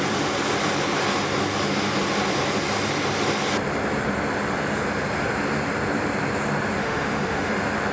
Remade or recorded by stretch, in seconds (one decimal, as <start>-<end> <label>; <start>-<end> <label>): 0.0-6.8 recorded; 6.8-7.5 remade; 7.5-7.9 recorded